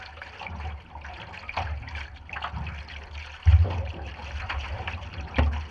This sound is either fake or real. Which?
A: real